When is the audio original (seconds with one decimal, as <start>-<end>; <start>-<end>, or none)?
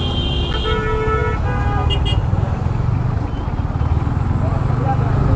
0.0-5.4